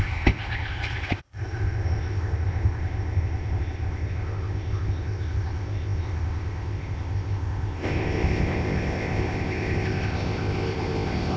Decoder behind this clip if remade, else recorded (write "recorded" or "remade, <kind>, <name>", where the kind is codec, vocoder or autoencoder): remade, codec, ZipCodec